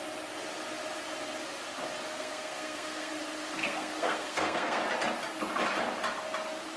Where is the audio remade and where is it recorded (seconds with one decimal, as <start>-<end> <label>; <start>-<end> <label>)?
0.0-2.1 recorded; 2.1-3.1 remade; 3.1-3.6 recorded; 3.6-4.8 remade; 4.8-6.8 recorded